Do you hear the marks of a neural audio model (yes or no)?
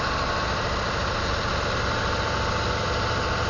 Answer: no